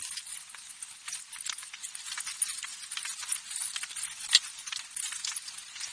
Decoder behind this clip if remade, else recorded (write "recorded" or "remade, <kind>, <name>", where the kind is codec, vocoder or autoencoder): recorded